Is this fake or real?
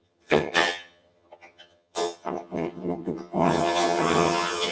fake